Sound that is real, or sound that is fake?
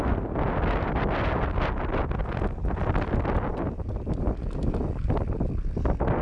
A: real